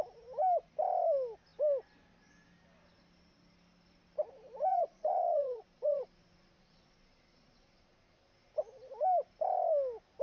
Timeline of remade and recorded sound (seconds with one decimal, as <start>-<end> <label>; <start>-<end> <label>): 0.0-4.7 recorded; 4.7-8.5 remade; 8.5-10.2 recorded